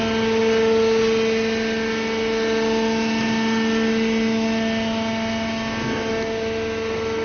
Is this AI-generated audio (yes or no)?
no